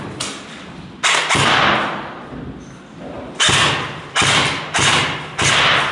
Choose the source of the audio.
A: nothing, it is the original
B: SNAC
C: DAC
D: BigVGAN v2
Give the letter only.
A